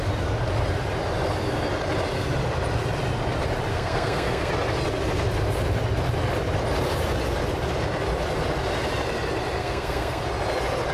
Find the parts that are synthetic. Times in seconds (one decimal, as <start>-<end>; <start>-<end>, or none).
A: 3.7-4.5; 9.6-10.2